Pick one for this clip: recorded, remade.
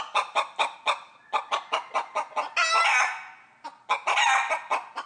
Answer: recorded